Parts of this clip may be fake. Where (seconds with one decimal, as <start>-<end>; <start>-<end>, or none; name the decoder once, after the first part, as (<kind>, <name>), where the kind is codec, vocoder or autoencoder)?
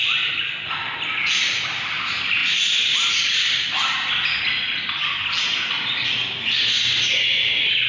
none